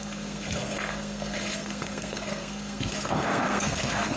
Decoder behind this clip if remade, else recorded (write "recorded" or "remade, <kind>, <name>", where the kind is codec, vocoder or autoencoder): remade, codec, SNAC